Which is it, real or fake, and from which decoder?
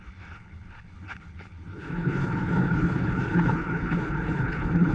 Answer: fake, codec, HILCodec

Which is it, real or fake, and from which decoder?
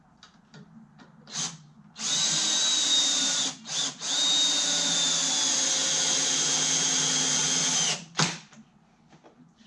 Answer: real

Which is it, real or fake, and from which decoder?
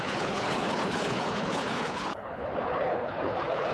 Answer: fake, codec, HILCodec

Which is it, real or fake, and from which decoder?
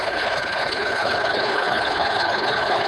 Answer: fake, codec, HILCodec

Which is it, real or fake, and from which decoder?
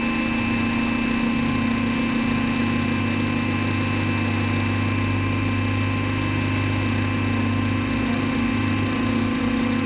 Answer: real